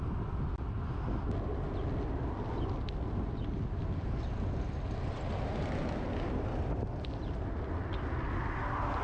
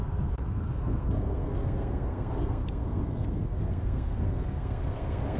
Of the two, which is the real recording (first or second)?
first